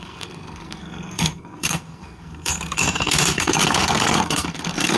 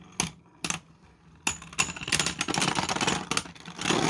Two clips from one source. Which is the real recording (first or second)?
second